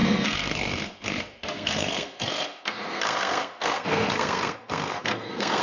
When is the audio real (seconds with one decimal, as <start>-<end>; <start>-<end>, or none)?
none